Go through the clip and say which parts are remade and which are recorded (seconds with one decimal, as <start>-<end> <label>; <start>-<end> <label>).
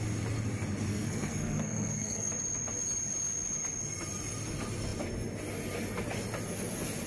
0.0-0.9 recorded; 0.9-2.3 remade; 2.3-7.1 recorded